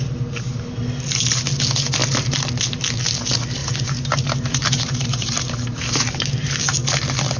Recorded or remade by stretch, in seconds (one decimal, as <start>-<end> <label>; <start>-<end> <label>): 0.0-3.6 recorded; 3.6-6.6 remade; 6.6-7.4 recorded